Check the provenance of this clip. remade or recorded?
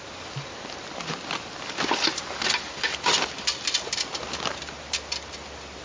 recorded